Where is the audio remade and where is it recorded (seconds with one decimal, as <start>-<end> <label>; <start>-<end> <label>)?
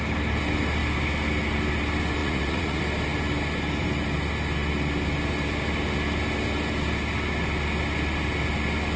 0.0-2.2 recorded; 2.2-2.8 remade; 2.8-9.0 recorded